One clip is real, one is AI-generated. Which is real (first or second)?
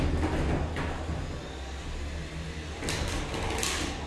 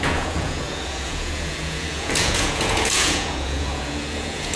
first